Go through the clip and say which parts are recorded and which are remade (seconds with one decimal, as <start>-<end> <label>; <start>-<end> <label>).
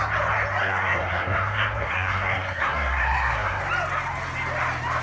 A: 0.0-0.6 recorded; 0.6-3.6 remade; 3.6-5.0 recorded